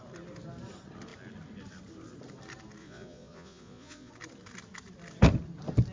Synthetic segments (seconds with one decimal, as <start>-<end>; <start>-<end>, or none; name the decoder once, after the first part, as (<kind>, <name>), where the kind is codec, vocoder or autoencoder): 2.8-4.1 (vocoder, Vocos)